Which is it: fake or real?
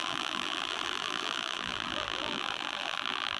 fake